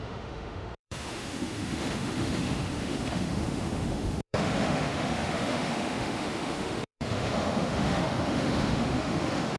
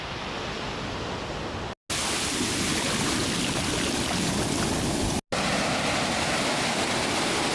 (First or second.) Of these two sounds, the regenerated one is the first